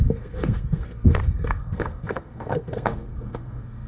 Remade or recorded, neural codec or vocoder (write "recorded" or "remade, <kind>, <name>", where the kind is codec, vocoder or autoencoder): remade, codec, SNAC